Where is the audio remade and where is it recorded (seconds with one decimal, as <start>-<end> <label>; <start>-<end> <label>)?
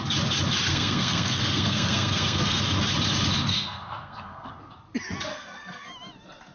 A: 0.0-0.7 recorded; 0.7-2.6 remade; 2.6-3.5 recorded; 3.5-4.5 remade; 4.5-5.3 recorded; 5.3-5.9 remade; 5.9-6.5 recorded